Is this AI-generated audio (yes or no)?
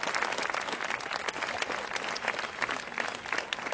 no